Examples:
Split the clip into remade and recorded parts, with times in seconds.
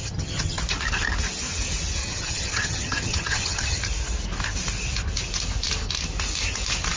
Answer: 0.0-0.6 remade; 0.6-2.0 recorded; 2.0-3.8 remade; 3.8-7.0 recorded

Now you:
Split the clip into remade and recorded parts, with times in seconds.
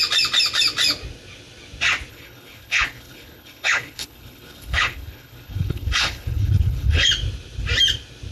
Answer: 0.0-2.1 recorded; 2.1-7.1 remade; 7.1-8.3 recorded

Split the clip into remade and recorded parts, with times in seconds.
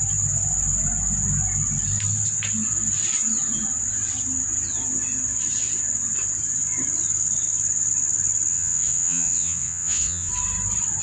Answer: 0.0-8.5 recorded; 8.5-10.3 remade; 10.3-11.0 recorded